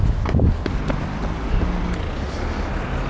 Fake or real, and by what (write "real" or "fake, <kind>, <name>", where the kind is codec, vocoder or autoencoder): real